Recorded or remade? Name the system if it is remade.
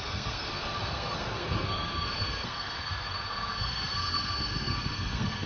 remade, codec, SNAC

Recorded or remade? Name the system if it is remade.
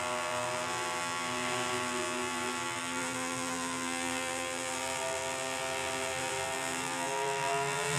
remade, vocoder, BigVGAN v2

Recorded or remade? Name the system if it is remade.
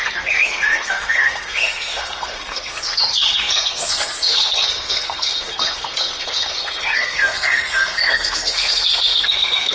remade, codec, SNAC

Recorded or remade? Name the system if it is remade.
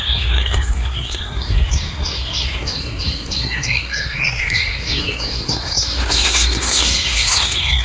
remade, codec, SNAC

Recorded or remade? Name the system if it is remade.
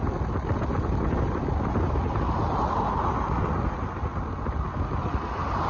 recorded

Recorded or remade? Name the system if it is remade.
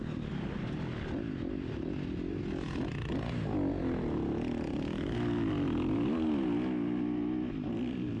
recorded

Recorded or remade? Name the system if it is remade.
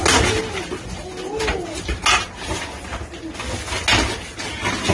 recorded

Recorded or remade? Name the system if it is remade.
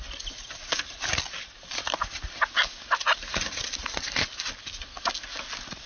recorded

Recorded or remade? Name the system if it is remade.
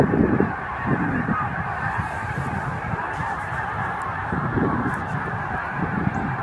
remade, vocoder, BigVGAN v2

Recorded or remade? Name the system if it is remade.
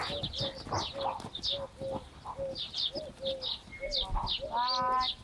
recorded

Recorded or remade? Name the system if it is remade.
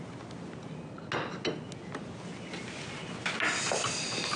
recorded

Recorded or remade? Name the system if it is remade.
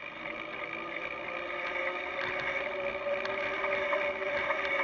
recorded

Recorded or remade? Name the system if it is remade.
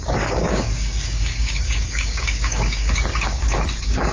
remade, codec, DAC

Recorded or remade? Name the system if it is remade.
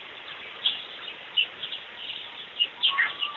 recorded